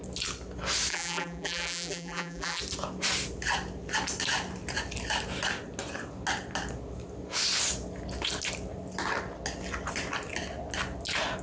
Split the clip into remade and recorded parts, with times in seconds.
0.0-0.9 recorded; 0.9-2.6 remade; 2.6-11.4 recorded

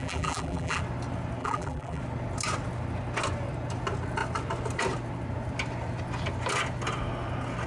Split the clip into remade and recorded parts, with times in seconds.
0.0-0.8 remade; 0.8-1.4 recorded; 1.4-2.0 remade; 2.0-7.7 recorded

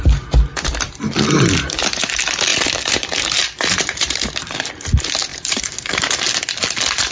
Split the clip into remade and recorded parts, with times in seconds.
0.0-2.5 recorded; 2.5-4.7 remade; 4.7-5.3 recorded; 5.3-6.2 remade; 6.2-7.1 recorded

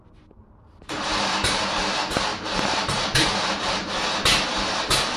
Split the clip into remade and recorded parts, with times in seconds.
0.0-0.4 recorded; 0.4-1.8 remade; 1.8-2.3 recorded; 2.3-4.0 remade; 4.0-5.2 recorded

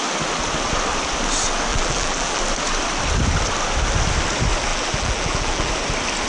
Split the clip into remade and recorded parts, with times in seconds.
0.0-1.7 recorded; 1.7-2.4 remade; 2.4-4.7 recorded; 4.7-5.7 remade; 5.7-6.3 recorded